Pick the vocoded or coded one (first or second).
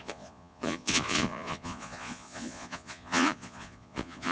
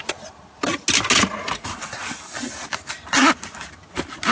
first